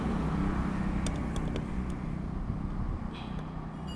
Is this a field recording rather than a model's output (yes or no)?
yes